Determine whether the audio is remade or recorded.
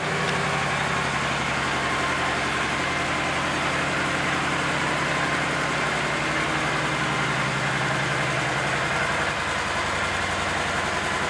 recorded